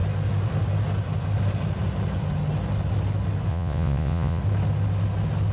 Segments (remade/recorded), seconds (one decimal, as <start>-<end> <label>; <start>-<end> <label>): 0.0-3.5 recorded; 3.5-4.4 remade; 4.4-5.5 recorded

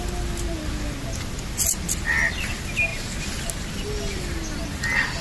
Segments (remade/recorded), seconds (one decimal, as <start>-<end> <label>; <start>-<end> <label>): 0.0-5.2 recorded

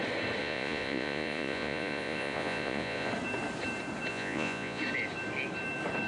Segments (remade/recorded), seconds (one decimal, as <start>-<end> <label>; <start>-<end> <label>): 0.0-0.4 recorded; 0.4-3.1 remade; 3.1-4.1 recorded; 4.1-4.8 remade; 4.8-6.1 recorded

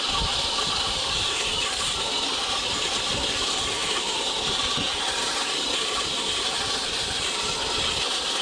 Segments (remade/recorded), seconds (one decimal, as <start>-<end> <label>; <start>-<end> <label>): 0.0-8.4 recorded

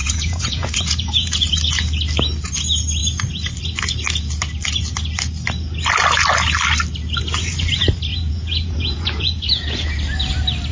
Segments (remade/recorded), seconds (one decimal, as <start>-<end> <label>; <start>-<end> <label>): 0.0-1.5 remade; 1.5-8.1 recorded; 8.1-9.9 remade; 9.9-10.7 recorded

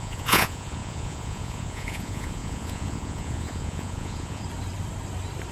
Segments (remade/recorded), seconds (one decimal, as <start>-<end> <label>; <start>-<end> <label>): 0.0-4.4 remade; 4.4-5.5 recorded